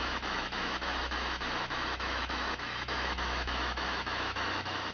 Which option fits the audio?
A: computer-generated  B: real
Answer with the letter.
A